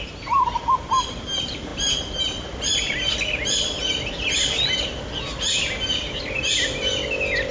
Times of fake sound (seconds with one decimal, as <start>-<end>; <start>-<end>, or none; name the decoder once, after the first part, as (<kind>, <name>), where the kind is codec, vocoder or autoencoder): none